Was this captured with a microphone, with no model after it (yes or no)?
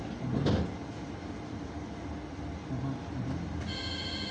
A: yes